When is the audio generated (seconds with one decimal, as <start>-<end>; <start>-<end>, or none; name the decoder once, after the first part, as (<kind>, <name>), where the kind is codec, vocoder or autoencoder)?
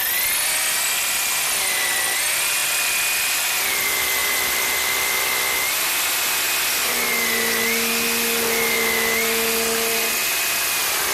none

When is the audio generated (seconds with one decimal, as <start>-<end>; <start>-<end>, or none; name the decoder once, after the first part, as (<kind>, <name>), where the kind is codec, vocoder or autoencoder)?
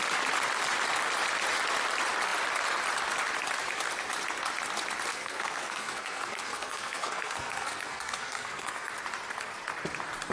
5.1-8.9 (codec, SNAC)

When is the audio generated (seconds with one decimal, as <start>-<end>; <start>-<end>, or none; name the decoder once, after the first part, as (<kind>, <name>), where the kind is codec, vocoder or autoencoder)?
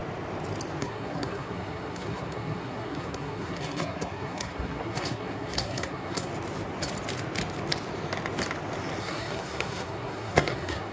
0.8-6.3 (codec, SNAC); 9.0-10.9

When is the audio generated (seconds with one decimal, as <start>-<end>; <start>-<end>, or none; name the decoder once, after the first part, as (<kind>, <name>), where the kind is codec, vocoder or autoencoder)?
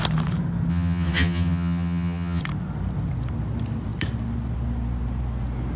0.7-2.4 (vocoder, HiFi-GAN)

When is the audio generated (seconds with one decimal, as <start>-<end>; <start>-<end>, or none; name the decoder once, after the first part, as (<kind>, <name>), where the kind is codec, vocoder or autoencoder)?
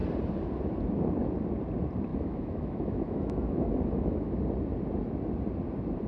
2.1-4.4 (autoencoder, DAC-VAE)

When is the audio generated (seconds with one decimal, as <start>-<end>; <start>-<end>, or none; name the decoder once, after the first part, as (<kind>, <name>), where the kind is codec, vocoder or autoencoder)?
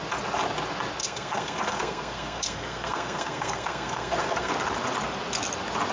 1.0-4.5 (codec, SNAC)